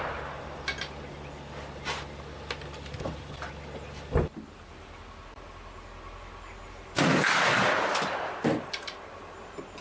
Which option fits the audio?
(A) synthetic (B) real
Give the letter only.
B